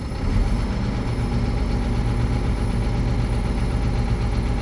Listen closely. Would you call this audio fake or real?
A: real